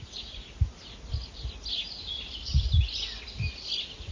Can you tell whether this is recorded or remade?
recorded